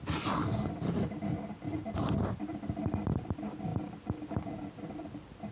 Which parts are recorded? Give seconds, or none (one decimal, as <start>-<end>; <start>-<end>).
0.0-5.5